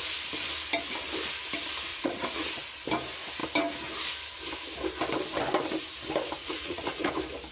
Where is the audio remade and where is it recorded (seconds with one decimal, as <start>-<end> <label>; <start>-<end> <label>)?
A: 0.0-1.9 recorded; 1.9-2.5 remade; 2.5-6.4 recorded; 6.4-7.1 remade; 7.1-7.5 recorded